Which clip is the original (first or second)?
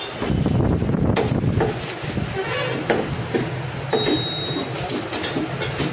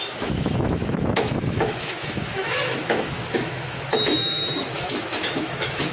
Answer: first